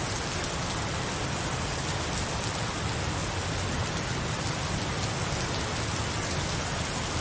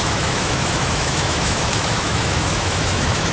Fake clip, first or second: second